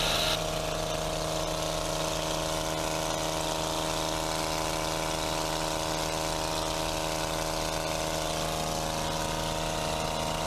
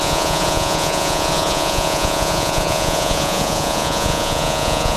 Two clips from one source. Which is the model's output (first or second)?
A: second